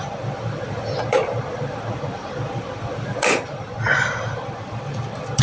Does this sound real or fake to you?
fake